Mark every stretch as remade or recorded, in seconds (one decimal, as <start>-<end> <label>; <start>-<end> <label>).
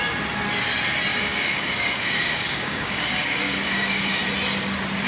0.0-1.1 recorded; 1.1-4.2 remade; 4.2-5.1 recorded